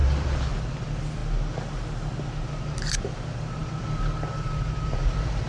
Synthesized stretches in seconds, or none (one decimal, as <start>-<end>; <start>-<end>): 0.0-1.2; 3.0-5.5